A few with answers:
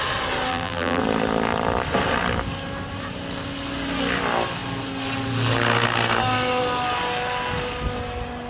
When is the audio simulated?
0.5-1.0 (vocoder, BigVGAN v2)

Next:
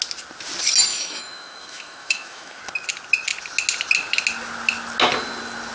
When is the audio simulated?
0.9-2.6 (autoencoder, DAC-VAE)